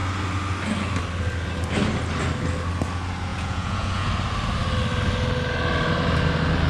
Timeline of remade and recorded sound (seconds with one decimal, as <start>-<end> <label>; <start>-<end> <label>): 0.0-3.3 recorded; 3.3-4.1 remade; 4.1-6.7 recorded

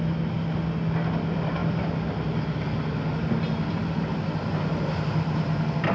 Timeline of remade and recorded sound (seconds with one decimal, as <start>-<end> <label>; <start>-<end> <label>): 0.0-5.9 recorded

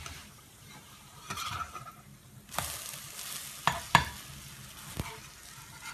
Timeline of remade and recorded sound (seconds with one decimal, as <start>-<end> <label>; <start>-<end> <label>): 0.0-2.1 remade; 2.1-5.9 recorded